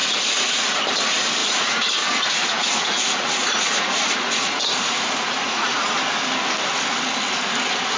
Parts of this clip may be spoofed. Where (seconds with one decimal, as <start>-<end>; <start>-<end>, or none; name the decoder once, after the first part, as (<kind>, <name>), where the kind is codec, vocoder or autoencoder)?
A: 0.0-0.8 (vocoder, Vocos); 1.4-5.9